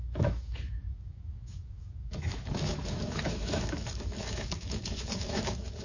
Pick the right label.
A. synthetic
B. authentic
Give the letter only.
A